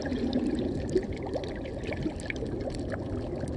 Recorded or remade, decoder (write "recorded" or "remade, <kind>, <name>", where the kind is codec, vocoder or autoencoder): recorded